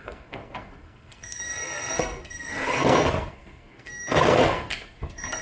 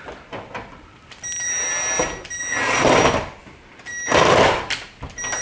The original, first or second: second